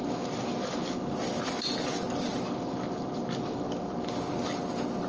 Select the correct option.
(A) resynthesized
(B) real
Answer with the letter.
B